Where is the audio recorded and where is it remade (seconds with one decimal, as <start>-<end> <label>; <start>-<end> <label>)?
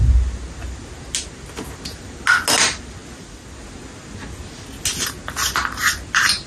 0.0-6.5 recorded